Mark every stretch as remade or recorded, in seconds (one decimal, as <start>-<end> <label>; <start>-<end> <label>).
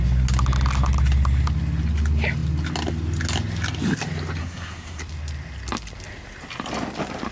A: 0.0-4.4 recorded; 4.4-5.0 remade; 5.0-7.3 recorded